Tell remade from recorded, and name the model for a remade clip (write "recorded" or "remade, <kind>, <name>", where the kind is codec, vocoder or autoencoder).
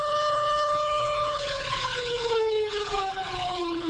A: remade, codec, HILCodec